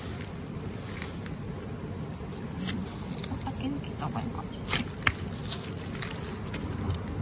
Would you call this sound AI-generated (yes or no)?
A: no